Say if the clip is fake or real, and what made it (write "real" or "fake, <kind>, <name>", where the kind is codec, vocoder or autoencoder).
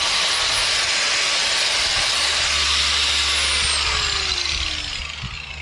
real